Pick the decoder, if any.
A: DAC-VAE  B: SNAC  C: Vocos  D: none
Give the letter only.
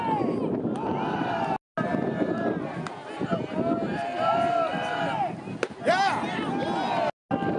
D